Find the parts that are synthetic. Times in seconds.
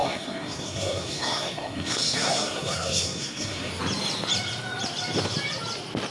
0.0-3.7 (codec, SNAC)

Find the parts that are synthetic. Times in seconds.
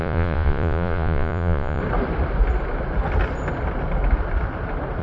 0.0-1.8 (vocoder, Vocos)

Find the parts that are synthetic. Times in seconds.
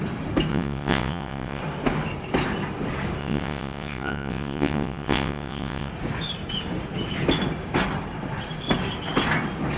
0.5-1.6 (vocoder, WaveNeXt); 3.2-5.9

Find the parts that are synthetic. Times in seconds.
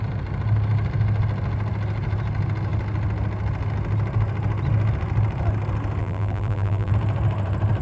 6.0-6.9 (vocoder, BigVGAN v2)